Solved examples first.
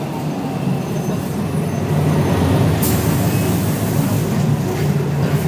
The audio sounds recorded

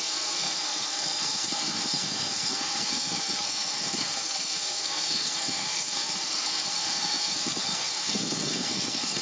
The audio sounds remade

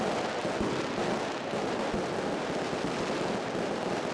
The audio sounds recorded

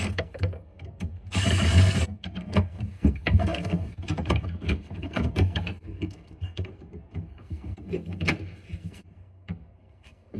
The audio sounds remade